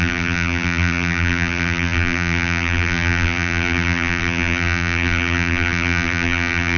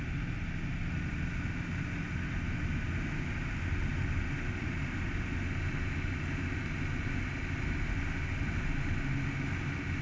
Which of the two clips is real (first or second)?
second